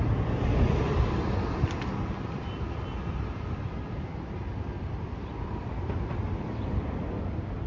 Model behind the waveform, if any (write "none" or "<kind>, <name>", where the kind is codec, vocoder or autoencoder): vocoder, BigVGAN v2